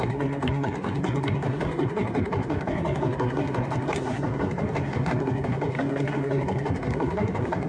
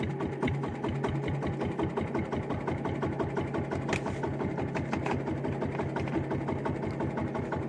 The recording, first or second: second